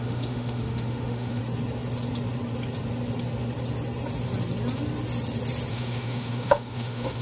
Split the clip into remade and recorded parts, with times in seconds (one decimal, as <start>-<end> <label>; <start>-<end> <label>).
0.0-1.4 remade; 1.4-5.7 recorded; 5.7-7.2 remade